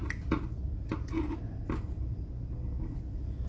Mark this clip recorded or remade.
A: recorded